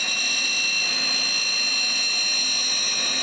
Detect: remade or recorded recorded